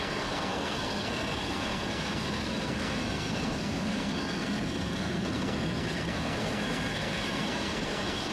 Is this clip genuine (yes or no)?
no